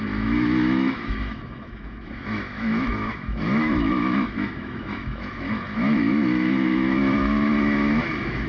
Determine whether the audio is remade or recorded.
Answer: remade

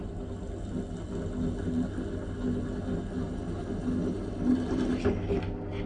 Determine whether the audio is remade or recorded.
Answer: recorded